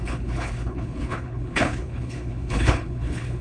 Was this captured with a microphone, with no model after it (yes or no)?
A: no